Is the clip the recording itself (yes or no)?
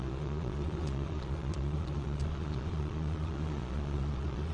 no